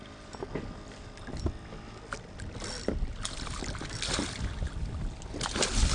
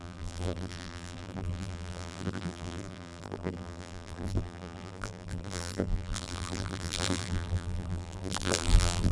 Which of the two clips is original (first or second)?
first